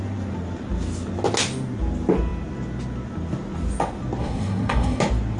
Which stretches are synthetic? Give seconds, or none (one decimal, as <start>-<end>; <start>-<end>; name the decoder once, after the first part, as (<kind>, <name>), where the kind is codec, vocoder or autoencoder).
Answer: 4.2-5.0 (codec, SNAC)